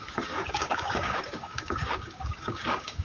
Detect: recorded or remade remade